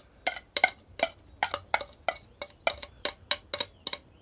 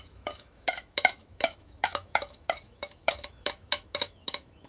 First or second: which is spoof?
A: second